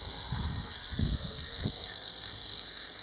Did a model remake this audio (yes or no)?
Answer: yes